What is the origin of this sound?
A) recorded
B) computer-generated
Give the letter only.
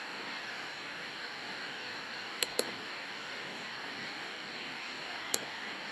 B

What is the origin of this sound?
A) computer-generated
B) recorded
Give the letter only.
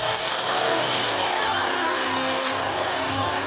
A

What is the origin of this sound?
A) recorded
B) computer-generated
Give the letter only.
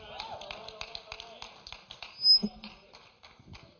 A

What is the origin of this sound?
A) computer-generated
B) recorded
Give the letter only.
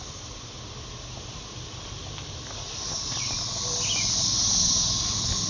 B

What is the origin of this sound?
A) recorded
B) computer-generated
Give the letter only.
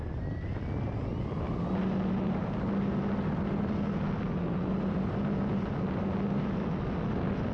A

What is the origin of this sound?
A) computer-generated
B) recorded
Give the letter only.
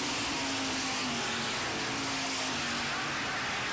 B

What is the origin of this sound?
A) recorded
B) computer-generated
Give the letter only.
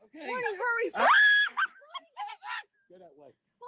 A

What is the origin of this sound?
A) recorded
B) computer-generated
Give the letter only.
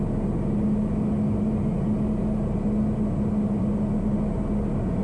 A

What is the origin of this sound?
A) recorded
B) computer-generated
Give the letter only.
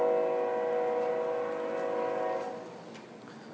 A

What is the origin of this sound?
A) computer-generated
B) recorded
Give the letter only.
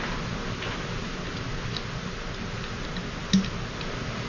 B